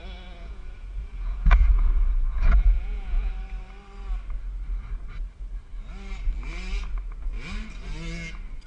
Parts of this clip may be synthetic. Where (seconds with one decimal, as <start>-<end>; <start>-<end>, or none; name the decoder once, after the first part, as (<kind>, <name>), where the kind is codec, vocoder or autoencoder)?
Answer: 0.0-3.3 (vocoder, Vocos)